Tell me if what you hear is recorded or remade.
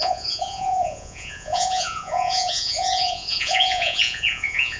remade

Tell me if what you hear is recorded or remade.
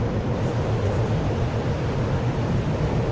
recorded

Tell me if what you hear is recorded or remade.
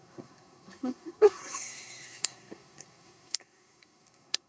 remade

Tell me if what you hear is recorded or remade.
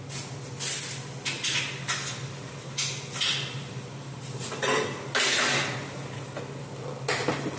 recorded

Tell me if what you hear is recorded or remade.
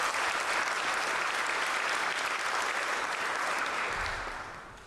remade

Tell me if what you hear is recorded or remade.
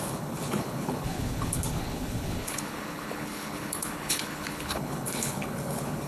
remade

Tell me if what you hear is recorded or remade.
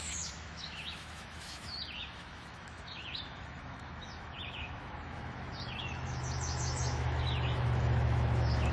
remade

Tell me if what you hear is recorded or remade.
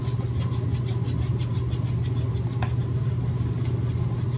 recorded